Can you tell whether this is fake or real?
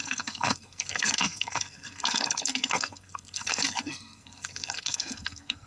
fake